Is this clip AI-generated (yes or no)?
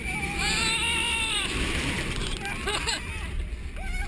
no